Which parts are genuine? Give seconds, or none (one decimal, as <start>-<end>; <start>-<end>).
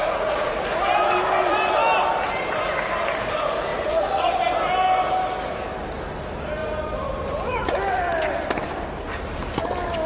0.6-3.7; 4.4-10.1